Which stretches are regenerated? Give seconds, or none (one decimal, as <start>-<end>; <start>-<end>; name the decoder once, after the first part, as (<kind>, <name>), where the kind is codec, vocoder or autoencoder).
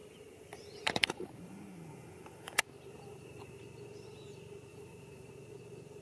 0.0-3.6 (vocoder, BigVGAN v2); 4.7-5.3